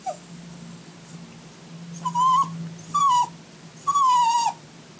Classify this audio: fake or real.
real